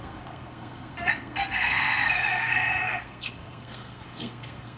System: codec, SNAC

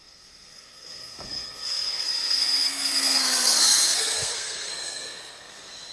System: codec, SNAC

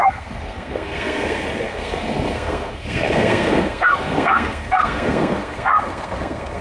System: codec, SNAC